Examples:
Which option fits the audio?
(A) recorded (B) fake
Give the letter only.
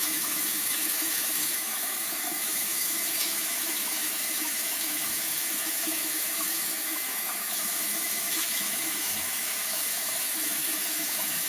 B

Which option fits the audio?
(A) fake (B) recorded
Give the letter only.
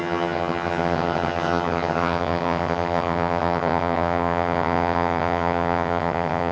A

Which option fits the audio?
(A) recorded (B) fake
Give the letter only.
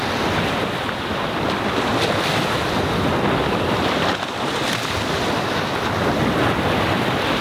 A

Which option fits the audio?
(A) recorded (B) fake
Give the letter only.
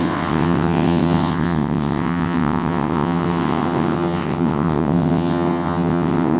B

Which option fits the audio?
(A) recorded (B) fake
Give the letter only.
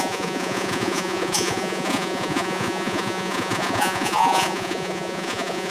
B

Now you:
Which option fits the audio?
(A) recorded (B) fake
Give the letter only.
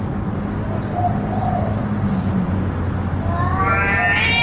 A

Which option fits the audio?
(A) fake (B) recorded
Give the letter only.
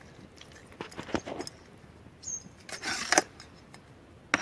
B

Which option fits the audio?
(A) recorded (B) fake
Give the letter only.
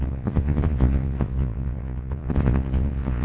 B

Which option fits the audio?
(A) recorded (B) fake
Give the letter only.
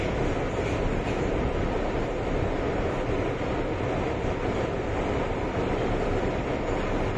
A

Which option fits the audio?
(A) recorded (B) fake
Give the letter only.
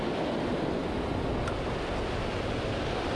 A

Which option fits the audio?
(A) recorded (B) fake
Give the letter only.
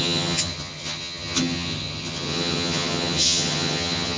B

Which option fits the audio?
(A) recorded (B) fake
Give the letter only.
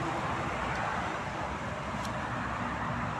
A